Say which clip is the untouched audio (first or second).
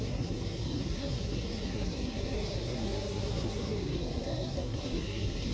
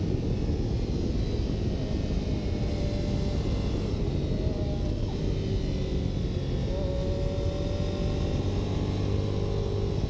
second